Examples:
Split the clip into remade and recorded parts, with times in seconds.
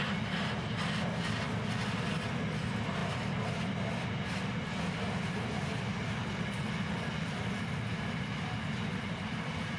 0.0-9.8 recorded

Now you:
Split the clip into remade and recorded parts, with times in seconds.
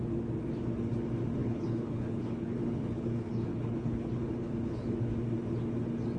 0.0-1.4 recorded; 1.4-5.1 remade; 5.1-6.2 recorded